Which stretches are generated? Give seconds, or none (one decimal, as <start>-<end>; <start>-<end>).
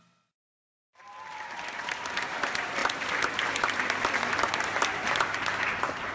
none